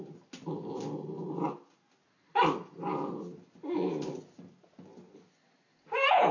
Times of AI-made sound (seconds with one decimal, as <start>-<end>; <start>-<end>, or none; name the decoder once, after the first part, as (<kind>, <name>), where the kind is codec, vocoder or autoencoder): 5.7-6.3 (vocoder, Vocos)